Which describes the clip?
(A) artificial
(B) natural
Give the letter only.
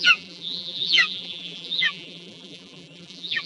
A